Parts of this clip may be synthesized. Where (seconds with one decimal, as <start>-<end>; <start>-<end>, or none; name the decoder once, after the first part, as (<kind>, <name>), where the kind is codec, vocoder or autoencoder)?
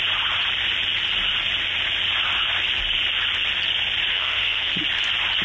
4.1-4.7 (codec, SNAC)